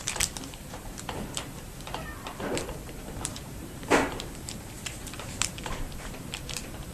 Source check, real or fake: fake